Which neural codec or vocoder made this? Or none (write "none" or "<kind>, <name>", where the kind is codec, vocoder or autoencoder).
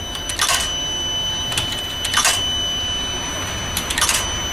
none